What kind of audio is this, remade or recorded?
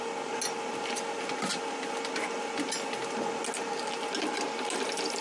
recorded